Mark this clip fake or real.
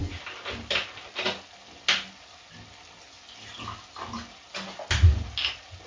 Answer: real